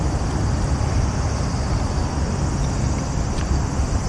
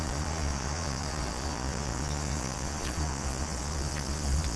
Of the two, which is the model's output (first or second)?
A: second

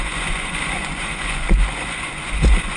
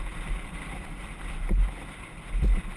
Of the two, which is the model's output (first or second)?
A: first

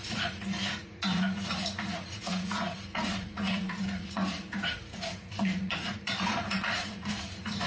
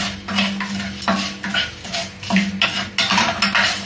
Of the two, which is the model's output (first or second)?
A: first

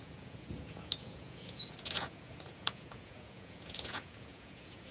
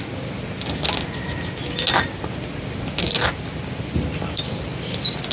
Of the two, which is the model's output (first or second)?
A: first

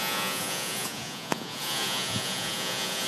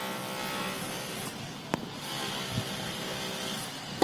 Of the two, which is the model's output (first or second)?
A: first